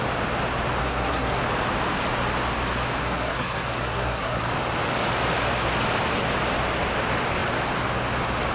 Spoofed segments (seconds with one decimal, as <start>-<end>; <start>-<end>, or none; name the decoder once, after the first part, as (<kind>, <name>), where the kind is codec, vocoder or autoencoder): 0.8-1.4 (codec, SNAC); 3.0-4.4